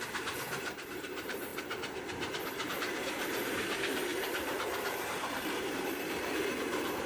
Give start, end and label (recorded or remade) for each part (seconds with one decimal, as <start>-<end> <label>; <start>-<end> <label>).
0.0-1.5 remade; 1.5-2.7 recorded; 2.7-7.1 remade